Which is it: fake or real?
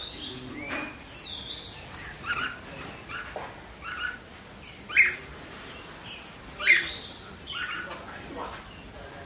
real